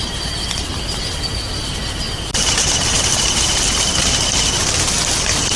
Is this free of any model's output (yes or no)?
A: yes